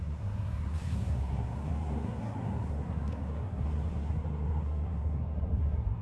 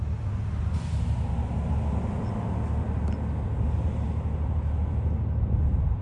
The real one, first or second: second